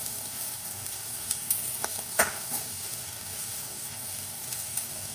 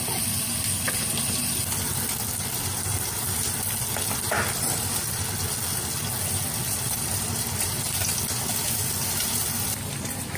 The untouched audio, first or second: second